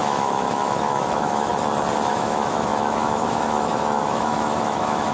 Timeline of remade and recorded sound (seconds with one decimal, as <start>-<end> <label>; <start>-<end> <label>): 0.0-1.5 remade; 1.5-2.1 recorded; 2.1-5.1 remade